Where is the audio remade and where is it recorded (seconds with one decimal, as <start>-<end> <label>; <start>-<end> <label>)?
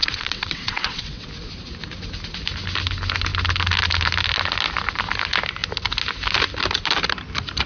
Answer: 0.0-1.3 remade; 1.3-7.7 recorded